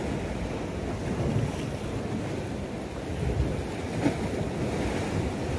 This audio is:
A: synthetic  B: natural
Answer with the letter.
B